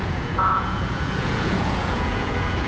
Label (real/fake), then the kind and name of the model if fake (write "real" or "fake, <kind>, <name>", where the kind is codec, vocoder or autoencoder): fake, vocoder, Vocos